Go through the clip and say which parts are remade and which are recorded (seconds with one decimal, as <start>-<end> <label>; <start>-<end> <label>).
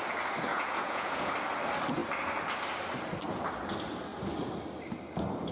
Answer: 0.0-0.5 recorded; 0.5-1.3 remade; 1.3-5.5 recorded